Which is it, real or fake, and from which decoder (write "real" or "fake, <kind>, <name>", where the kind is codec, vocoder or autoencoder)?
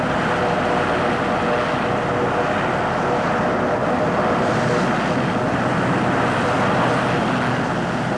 real